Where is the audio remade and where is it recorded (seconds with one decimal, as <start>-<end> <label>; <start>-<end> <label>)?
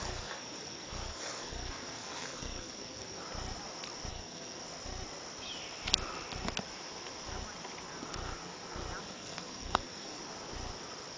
0.0-3.2 remade; 3.2-4.1 recorded; 4.1-4.6 remade; 4.6-9.0 recorded; 9.0-10.2 remade; 10.2-11.2 recorded